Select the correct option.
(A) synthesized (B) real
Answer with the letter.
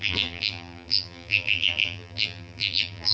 A